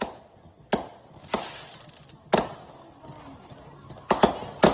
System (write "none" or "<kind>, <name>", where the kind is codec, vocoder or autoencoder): none